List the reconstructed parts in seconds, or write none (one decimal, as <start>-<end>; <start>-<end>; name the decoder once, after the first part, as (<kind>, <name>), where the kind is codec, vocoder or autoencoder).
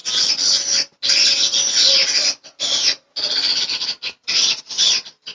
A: none